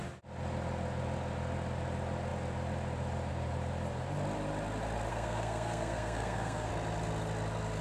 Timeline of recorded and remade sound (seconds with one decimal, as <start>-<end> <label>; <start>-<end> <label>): 0.0-5.1 recorded; 5.1-6.7 remade; 6.7-7.8 recorded